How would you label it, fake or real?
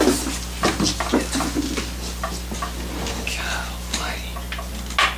real